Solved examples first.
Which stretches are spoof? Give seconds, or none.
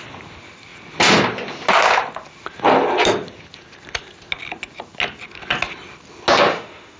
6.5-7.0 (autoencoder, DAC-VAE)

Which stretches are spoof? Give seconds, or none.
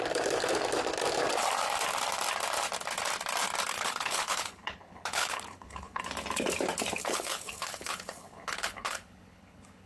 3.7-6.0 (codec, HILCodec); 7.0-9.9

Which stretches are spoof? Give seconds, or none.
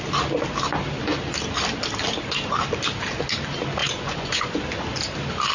3.8-4.6 (vocoder, Vocos)